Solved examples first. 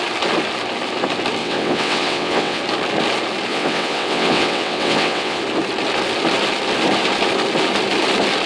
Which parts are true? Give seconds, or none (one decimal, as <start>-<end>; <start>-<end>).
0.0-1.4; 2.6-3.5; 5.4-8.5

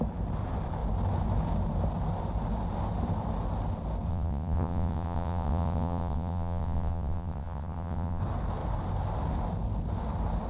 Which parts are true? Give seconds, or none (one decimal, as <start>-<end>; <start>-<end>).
0.0-4.1; 8.2-10.5

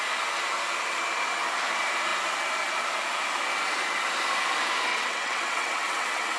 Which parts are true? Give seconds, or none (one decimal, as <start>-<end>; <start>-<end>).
0.0-4.9